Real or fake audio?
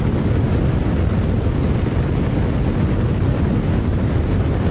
real